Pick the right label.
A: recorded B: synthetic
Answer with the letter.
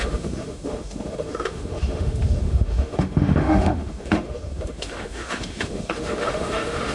B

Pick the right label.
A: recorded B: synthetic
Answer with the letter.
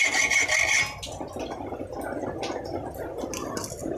A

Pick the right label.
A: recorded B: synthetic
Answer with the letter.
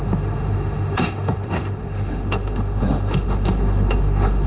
B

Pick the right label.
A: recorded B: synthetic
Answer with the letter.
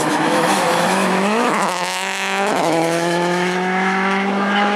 B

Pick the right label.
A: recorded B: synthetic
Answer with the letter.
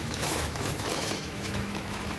B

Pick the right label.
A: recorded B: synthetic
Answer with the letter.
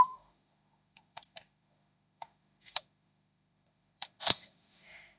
B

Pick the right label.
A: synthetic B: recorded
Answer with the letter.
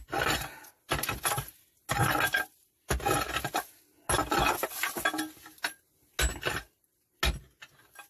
B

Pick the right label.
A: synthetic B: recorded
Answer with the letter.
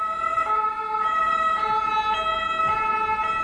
B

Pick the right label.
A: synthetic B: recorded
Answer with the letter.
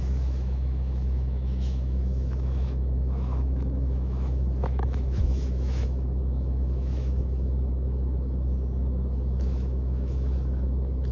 A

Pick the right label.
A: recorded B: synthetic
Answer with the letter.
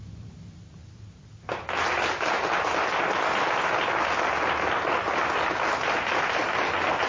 A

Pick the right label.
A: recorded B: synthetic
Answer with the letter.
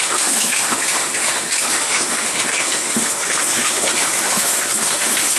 B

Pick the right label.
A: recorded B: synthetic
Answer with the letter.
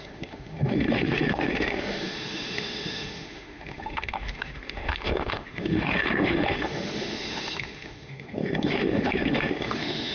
B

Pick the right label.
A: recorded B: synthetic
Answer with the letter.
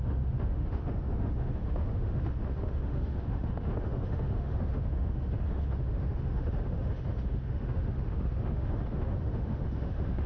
B